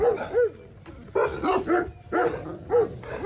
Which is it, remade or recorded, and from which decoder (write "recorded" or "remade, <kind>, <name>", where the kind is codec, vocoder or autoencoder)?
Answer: recorded